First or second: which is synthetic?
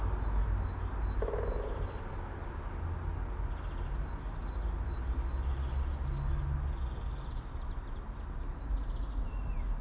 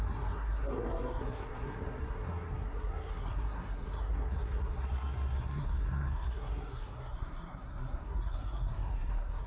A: second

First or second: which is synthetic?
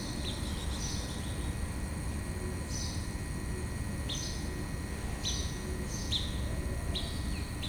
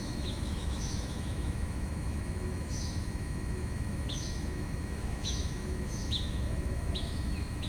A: second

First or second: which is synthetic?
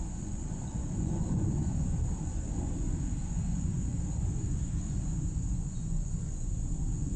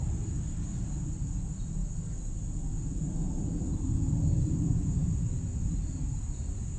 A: first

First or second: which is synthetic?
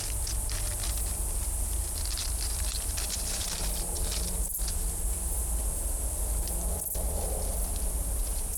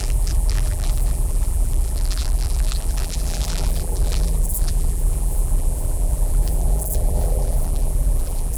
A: second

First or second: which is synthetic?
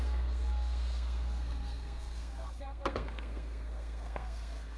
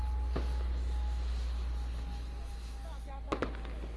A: first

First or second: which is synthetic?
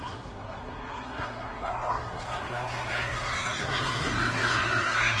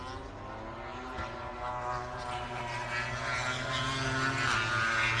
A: first